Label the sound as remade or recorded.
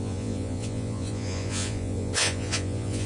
remade